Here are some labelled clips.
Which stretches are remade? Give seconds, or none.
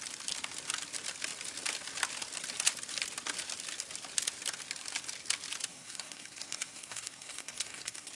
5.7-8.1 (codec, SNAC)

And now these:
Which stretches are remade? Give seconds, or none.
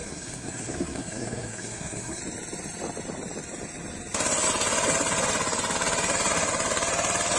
0.0-2.2 (codec, SNAC)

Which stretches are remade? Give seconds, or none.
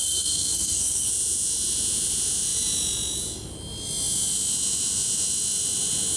0.0-1.1 (codec, SNAC)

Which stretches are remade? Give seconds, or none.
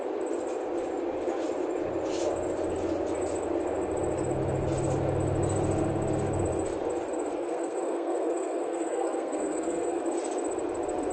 7.3-10.0 (codec, SNAC)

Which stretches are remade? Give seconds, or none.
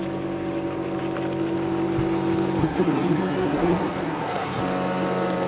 2.6-4.6 (codec, SNAC)